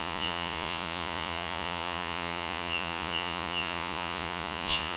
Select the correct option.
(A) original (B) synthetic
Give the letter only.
B